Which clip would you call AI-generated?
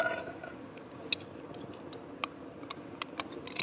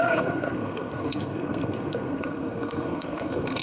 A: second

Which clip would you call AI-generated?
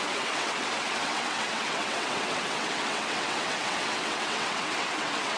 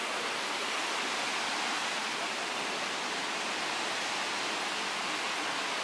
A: first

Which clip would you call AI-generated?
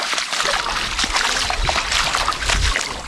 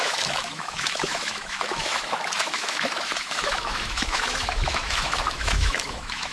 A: second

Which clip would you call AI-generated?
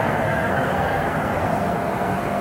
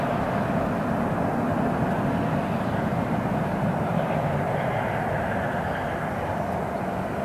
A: first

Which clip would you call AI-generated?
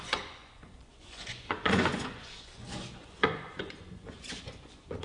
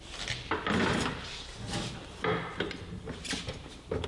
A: first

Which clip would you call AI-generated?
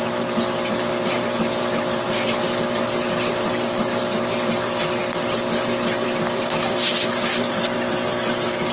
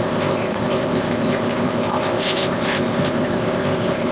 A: second